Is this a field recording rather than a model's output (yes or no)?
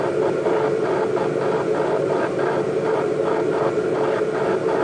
yes